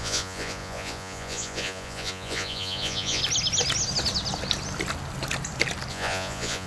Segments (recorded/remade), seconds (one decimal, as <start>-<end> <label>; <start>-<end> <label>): 0.0-3.2 remade; 3.2-5.9 recorded; 5.9-6.7 remade